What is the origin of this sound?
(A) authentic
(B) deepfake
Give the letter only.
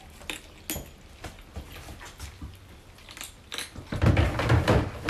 A